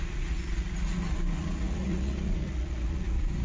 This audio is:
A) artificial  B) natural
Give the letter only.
A